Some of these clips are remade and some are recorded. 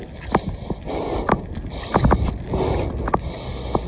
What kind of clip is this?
recorded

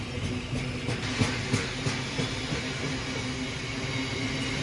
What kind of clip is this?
recorded